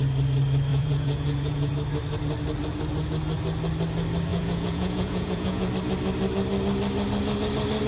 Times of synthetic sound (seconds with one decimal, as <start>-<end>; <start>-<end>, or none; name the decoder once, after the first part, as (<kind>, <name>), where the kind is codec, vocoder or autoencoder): 0.7-1.7 (vocoder, Vocos); 4.3-5.7